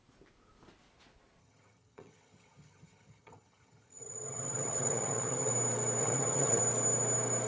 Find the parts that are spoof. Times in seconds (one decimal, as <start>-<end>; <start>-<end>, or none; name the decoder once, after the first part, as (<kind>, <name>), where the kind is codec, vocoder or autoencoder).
1.4-5.5 (vocoder, HiFi-GAN); 6.0-6.6